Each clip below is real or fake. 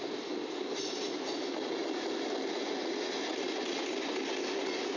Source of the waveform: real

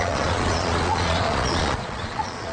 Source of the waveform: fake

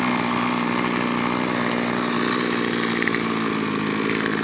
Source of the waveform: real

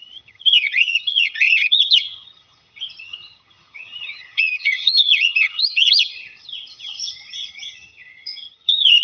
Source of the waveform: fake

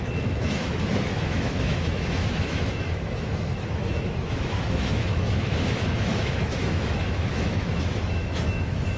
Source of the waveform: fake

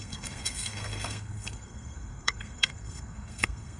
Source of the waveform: fake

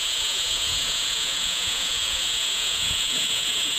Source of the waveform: fake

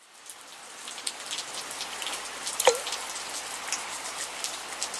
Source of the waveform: real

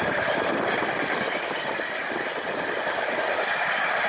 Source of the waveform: real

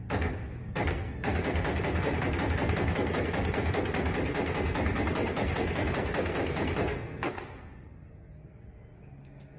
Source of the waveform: fake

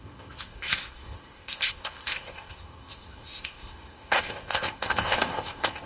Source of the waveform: fake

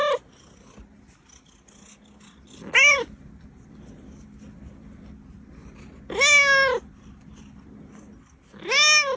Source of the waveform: real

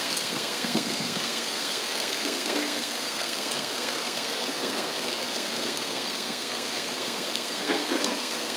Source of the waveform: fake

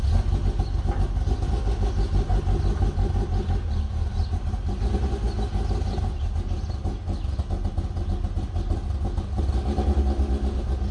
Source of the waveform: real